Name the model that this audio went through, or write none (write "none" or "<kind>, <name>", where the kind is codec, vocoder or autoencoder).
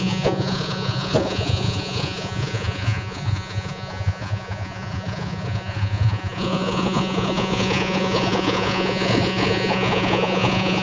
vocoder, Vocos